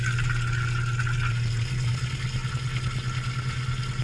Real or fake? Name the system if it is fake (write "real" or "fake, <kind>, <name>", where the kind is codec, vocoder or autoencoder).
real